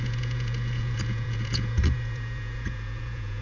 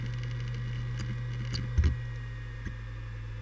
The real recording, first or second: second